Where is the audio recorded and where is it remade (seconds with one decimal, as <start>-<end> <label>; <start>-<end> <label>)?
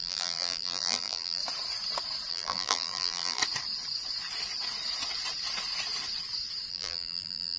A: 0.0-1.4 remade; 1.4-2.3 recorded; 2.3-3.4 remade; 3.4-6.7 recorded; 6.7-7.6 remade